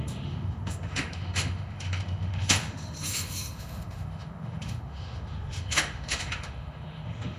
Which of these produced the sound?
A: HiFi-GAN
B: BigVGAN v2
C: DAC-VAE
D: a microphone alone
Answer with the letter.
C